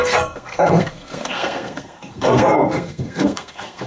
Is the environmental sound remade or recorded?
remade